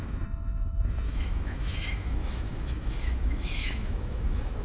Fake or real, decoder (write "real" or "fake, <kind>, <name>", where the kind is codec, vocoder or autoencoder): fake, autoencoder, DAC-VAE